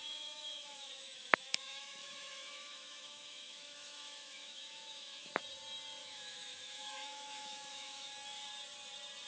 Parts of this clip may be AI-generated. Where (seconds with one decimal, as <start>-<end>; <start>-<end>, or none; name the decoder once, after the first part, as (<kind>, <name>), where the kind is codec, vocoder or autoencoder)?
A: 0.0-5.3 (autoencoder, DAC-VAE); 6.0-8.1